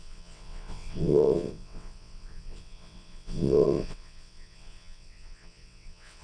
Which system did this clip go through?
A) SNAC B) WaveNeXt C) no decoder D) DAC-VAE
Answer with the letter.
B